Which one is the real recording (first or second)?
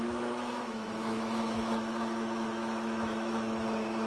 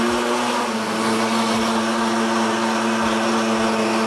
second